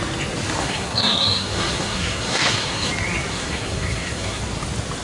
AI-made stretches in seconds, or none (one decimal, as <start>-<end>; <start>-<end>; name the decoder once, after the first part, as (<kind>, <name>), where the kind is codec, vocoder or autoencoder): 0.6-2.9 (codec, SNAC); 3.3-4.4